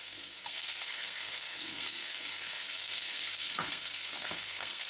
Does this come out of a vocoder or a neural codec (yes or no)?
yes